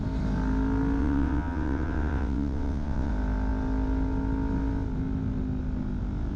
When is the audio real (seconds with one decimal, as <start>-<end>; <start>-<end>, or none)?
0.0-1.0; 3.1-6.4